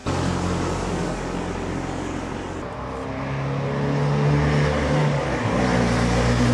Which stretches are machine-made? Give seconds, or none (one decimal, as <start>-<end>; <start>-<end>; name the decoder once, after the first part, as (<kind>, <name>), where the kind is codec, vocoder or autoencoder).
0.0-2.5 (codec, DAC); 5.0-5.6